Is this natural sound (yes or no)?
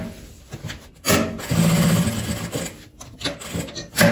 yes